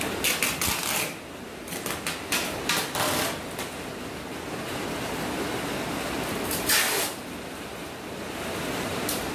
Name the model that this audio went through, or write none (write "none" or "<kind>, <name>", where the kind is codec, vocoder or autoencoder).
none